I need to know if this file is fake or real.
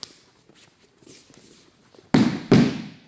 real